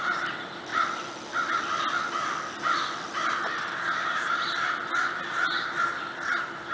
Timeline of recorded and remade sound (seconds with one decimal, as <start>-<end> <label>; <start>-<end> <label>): 0.0-6.7 recorded

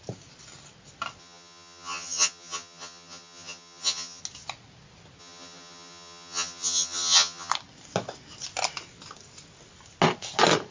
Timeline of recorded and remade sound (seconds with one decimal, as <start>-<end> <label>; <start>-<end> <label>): 0.0-1.2 recorded; 1.2-4.2 remade; 4.2-5.2 recorded; 5.2-7.5 remade; 7.5-10.7 recorded